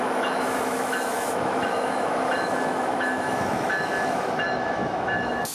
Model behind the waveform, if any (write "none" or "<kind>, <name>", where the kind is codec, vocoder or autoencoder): autoencoder, DAC-VAE